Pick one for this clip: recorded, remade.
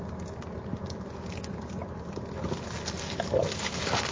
recorded